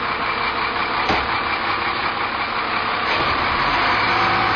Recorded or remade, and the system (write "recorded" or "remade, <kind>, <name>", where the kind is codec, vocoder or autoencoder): recorded